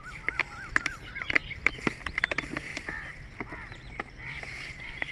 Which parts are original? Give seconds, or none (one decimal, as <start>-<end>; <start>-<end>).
2.7-4.4